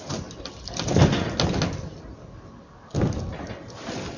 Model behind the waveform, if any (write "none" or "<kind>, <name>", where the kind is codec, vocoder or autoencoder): none